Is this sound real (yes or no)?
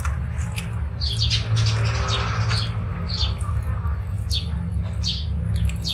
yes